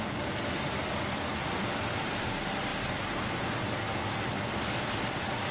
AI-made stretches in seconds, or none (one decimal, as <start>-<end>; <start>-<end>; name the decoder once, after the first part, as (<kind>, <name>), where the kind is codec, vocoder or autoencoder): none